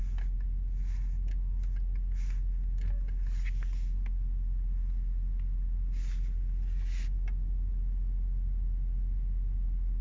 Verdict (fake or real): real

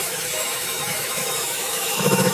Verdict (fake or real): fake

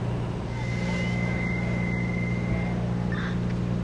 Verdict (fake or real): real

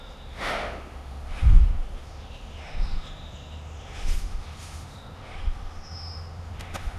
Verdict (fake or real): fake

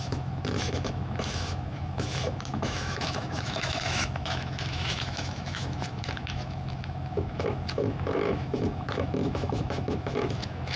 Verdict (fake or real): fake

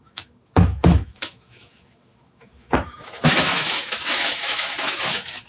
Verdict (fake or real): fake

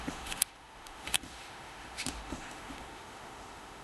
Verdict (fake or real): fake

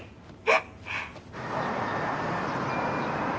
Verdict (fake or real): real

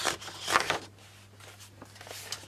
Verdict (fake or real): real